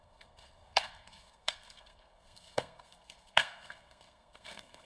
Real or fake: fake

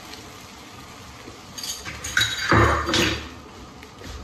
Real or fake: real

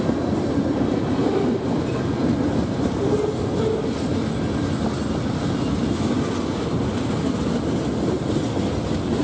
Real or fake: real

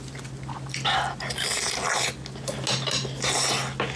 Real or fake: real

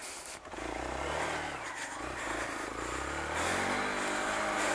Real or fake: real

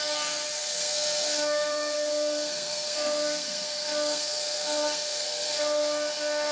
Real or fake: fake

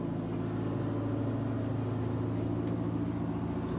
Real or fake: real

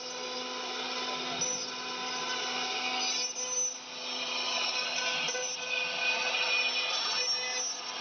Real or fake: real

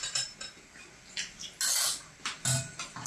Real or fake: real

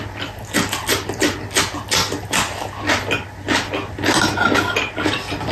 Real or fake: real